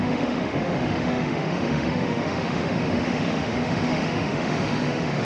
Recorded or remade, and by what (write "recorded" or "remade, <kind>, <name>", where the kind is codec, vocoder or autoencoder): remade, autoencoder, DAC-VAE